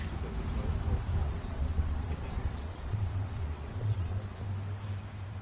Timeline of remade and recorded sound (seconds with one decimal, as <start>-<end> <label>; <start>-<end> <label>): 0.0-1.2 recorded; 1.2-4.4 remade; 4.4-5.4 recorded

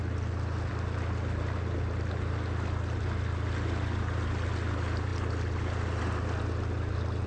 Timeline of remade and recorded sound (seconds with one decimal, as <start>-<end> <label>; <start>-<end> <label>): 0.0-7.3 recorded

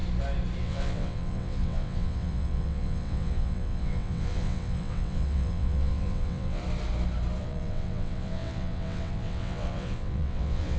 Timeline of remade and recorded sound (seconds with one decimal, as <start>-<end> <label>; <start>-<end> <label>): 0.0-0.6 recorded; 0.6-6.6 remade; 6.6-7.4 recorded; 7.4-10.8 remade

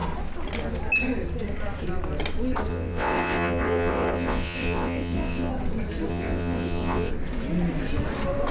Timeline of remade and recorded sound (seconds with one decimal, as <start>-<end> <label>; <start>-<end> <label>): 0.0-2.7 recorded; 2.7-5.5 remade; 5.5-6.1 recorded; 6.1-7.1 remade; 7.1-8.5 recorded

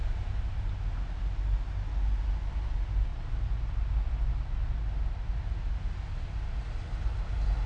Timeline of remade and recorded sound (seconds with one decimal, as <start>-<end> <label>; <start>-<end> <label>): 0.0-7.7 recorded

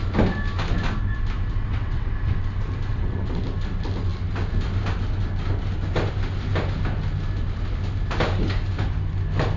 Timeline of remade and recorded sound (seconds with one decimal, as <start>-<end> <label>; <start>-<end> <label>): 0.0-1.6 recorded; 1.6-2.1 remade; 2.1-2.9 recorded; 2.9-3.4 remade; 3.4-9.6 recorded